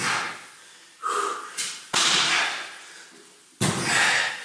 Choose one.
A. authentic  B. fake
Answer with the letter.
A